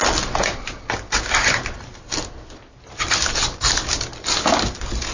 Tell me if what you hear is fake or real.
real